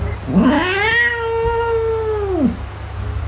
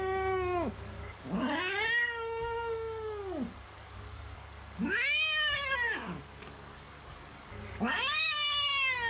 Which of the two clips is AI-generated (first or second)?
second